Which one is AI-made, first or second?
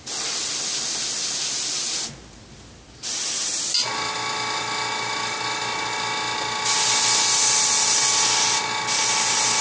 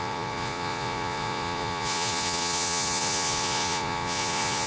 second